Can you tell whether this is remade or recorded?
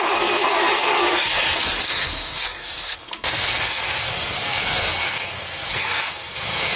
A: remade